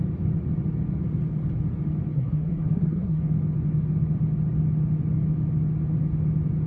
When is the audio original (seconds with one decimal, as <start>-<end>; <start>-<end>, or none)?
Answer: 0.0-2.1; 3.2-6.7